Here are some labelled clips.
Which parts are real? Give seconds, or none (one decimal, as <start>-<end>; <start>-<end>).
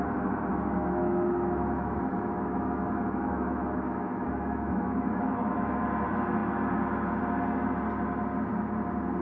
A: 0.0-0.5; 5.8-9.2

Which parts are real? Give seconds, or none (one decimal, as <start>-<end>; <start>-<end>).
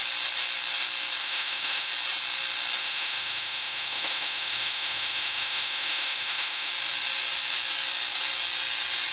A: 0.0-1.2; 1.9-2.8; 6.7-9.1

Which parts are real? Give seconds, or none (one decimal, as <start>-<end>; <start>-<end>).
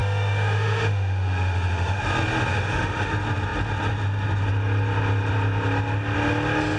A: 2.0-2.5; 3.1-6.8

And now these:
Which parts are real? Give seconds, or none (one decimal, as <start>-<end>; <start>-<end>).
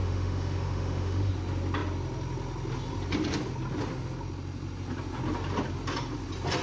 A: 1.3-6.6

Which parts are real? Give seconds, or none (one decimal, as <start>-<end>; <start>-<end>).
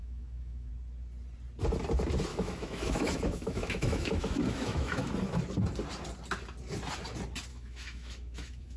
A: 0.7-2.3; 5.1-7.5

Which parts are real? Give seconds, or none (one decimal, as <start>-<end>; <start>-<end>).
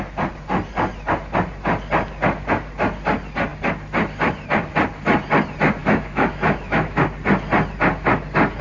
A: 0.0-5.8; 7.0-8.6